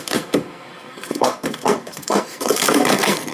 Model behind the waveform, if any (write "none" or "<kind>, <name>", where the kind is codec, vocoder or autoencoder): codec, SNAC